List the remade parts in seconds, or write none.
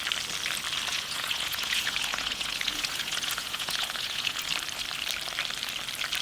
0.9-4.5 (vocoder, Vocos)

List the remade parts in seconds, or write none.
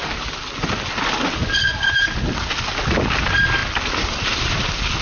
none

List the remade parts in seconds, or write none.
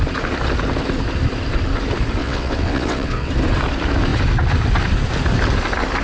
2.2-3.3 (vocoder, WaveNeXt)